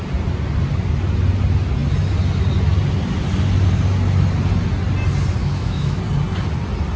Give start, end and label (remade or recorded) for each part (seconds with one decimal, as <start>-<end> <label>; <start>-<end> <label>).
0.0-5.4 recorded; 5.4-6.0 remade; 6.0-7.0 recorded